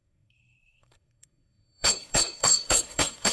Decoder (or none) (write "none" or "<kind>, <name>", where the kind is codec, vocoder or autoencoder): codec, SNAC